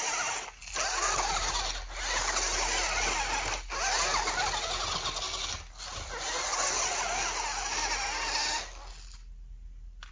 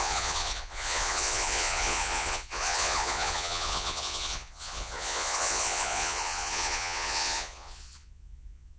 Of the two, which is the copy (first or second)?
second